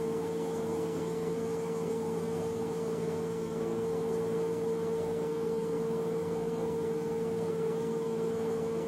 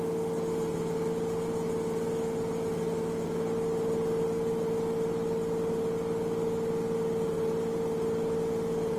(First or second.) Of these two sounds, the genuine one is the second